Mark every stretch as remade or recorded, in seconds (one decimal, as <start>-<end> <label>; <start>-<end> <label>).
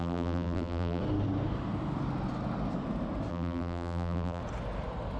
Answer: 0.0-1.0 remade; 1.0-3.3 recorded; 3.3-4.4 remade; 4.4-5.2 recorded